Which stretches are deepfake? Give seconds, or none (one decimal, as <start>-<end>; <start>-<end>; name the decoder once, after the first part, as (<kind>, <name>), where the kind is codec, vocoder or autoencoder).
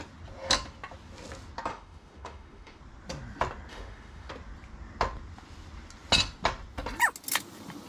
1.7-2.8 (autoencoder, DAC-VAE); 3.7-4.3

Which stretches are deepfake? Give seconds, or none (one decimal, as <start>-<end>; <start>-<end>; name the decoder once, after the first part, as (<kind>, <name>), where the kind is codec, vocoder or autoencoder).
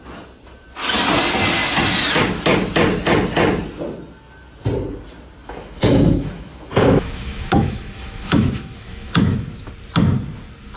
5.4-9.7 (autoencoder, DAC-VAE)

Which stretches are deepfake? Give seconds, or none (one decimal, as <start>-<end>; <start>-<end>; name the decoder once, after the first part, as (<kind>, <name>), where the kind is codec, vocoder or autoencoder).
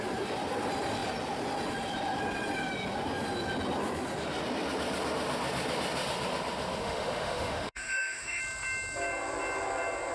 6.8-8.4 (autoencoder, DAC-VAE)